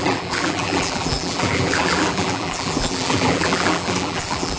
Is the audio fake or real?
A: fake